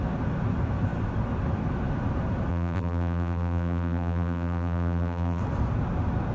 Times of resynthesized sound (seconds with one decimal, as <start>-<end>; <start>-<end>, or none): 2.5-5.4